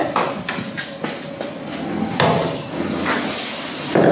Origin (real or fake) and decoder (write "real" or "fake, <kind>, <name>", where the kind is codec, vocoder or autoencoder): real